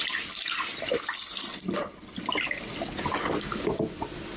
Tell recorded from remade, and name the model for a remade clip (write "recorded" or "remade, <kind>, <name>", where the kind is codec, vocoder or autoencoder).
recorded